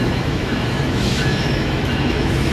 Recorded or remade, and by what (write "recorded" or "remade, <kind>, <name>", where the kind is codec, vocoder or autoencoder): remade, autoencoder, DAC-VAE